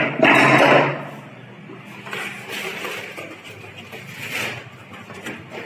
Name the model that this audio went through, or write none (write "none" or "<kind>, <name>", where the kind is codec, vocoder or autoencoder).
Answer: none